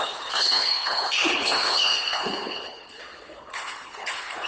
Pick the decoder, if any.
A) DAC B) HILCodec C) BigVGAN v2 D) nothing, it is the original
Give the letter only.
B